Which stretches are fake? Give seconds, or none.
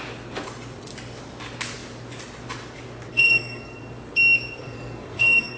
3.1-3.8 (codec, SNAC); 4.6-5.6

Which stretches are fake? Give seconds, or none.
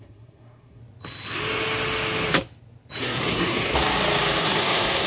0.0-0.8 (codec, SNAC); 3.0-3.7; 4.4-5.1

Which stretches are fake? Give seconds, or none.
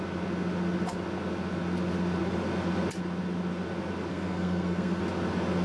4.1-5.0 (codec, SNAC)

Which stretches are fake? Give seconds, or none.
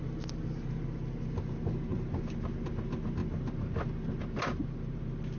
none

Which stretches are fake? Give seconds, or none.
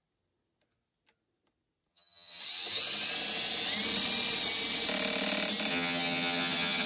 1.9-2.4 (vocoder, HiFi-GAN); 5.7-6.9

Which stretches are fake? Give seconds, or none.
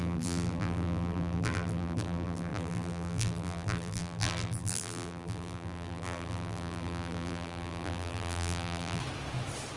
0.0-9.0 (vocoder, BigVGAN v2)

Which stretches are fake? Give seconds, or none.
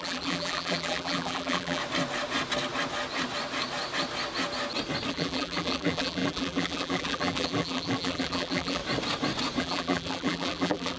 0.0-1.8 (vocoder, BigVGAN v2); 5.1-8.8; 9.6-11.0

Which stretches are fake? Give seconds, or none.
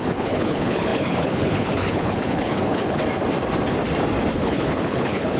0.0-3.0 (codec, HILCodec); 4.3-5.4